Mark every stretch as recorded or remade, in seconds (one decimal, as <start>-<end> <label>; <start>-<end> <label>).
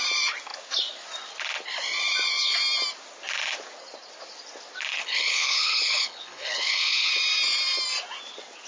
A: 0.0-4.9 recorded; 4.9-7.1 remade; 7.1-8.7 recorded